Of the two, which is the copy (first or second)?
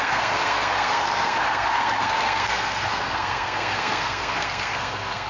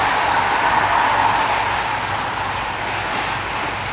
first